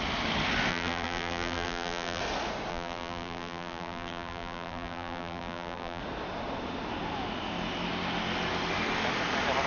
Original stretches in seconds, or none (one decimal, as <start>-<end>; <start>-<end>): 0.0-0.7; 2.2-2.7; 6.0-9.7